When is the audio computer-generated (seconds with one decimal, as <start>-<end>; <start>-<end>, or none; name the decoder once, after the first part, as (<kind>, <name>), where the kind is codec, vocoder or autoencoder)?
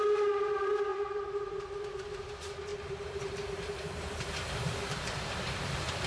0.9-1.6 (vocoder, BigVGAN v2); 2.7-6.1